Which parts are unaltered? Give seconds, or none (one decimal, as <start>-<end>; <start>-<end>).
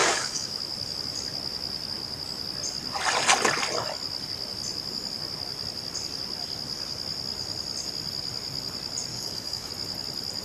0.6-9.1; 9.7-10.4